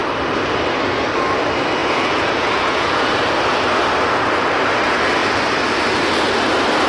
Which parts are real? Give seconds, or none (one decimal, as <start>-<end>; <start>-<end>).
0.0-1.8; 3.1-6.9